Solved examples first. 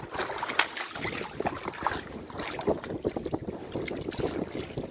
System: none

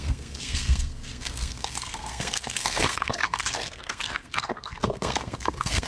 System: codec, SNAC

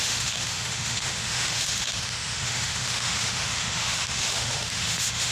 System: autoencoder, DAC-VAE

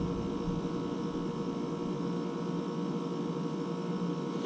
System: none